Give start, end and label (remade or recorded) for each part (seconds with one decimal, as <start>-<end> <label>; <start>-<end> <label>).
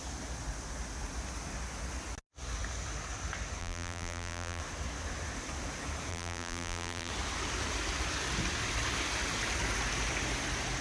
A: 0.0-3.6 recorded; 3.6-4.6 remade; 4.6-6.1 recorded; 6.1-7.1 remade; 7.1-10.8 recorded